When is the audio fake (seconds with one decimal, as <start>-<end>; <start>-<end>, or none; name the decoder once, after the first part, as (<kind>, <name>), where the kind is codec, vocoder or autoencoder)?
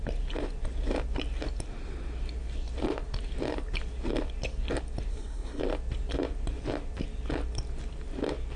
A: 5.1-5.6 (codec, SNAC)